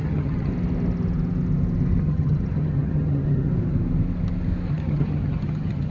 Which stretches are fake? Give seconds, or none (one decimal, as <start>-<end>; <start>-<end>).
0.0-0.5; 2.0-3.5; 4.7-5.9